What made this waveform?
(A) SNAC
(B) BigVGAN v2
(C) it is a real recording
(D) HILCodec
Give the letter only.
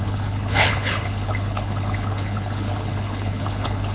D